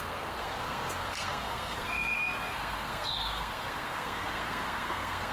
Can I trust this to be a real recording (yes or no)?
no